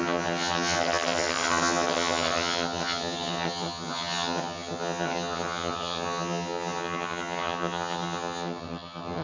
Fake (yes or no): yes